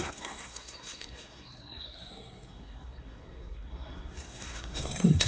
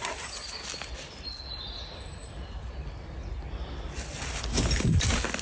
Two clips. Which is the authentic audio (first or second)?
second